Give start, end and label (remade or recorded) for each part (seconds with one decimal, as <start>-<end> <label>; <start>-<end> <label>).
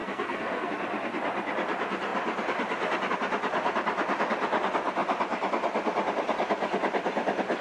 0.0-0.7 remade; 0.7-7.6 recorded